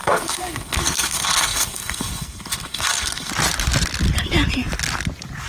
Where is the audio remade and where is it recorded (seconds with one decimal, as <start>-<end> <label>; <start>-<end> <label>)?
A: 0.0-3.3 remade; 3.3-5.5 recorded